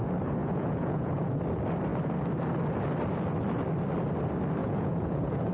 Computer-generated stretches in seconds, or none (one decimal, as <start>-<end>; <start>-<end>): 0.4-1.4; 4.6-5.5